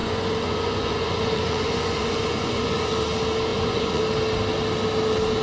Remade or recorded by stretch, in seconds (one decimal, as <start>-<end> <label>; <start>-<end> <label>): 0.0-2.9 remade; 2.9-3.5 recorded; 3.5-4.0 remade; 4.0-5.4 recorded